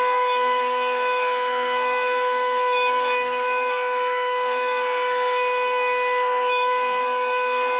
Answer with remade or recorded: remade